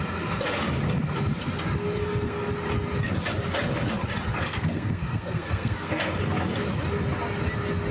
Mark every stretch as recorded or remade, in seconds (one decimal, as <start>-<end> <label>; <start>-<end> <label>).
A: 0.0-2.0 recorded; 2.0-2.5 remade; 2.5-4.3 recorded; 4.3-6.2 remade; 6.2-7.9 recorded